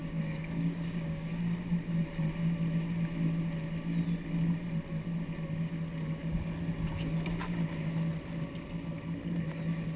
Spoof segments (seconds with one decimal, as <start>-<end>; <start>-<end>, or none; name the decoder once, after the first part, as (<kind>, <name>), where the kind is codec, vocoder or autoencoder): 0.0-1.6 (codec, DAC)